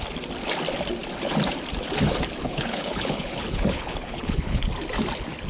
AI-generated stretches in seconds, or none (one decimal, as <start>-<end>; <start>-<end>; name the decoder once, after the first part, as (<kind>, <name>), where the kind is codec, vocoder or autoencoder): 2.4-4.6 (codec, HILCodec)